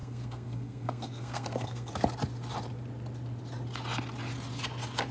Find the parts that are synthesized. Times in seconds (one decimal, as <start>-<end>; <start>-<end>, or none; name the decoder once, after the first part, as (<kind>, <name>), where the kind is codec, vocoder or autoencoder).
0.0-1.9 (codec, SNAC)

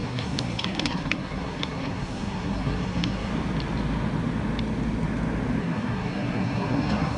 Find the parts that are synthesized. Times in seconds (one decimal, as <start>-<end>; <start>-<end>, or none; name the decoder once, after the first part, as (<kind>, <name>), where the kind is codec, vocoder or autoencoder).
0.0-3.3 (codec, SNAC); 5.6-7.2

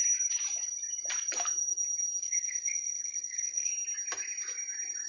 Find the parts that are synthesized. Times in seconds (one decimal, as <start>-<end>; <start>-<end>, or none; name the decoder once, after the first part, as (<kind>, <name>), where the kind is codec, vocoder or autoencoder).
2.2-3.7 (codec, SNAC)

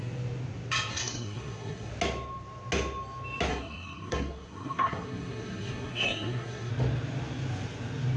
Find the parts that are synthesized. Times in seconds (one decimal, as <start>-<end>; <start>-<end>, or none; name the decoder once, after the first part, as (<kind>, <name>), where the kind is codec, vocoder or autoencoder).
0.9-1.9 (codec, SNAC); 3.5-6.7

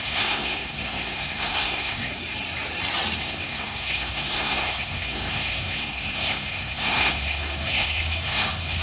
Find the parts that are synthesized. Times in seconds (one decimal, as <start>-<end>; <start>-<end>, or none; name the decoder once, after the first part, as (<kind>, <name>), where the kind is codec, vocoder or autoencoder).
0.0-2.1 (codec, SNAC); 3.2-8.8